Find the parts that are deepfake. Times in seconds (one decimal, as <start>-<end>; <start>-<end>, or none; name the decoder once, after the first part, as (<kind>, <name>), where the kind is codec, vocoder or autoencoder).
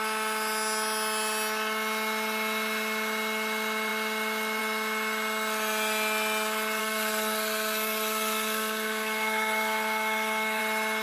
6.8-10.6 (codec, SNAC)